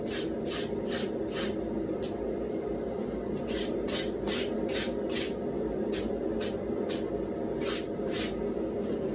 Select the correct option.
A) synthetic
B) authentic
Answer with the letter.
B